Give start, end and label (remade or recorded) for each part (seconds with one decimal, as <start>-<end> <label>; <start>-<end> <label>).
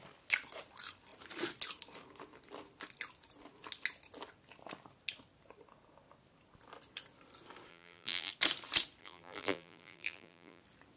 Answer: 0.0-7.7 recorded; 7.7-8.3 remade; 8.3-9.0 recorded; 9.0-10.6 remade; 10.6-11.0 recorded